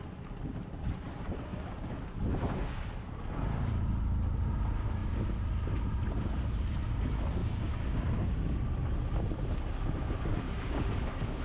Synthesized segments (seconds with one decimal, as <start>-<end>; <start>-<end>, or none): 1.5-2.8; 7.4-8.1; 10.3-11.4